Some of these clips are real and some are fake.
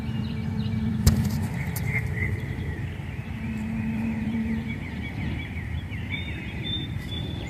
fake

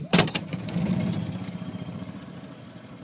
fake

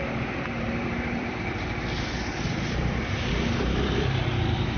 fake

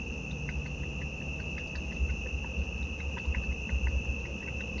real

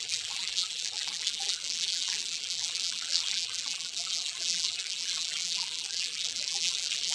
fake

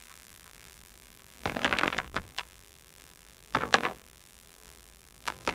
fake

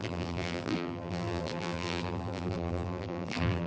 fake